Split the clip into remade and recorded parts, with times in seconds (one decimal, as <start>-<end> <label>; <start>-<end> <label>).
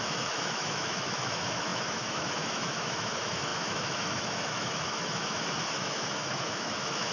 0.0-7.1 remade